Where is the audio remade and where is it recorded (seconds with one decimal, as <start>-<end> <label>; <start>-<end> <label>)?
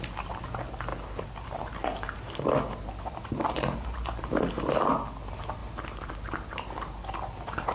0.0-7.7 recorded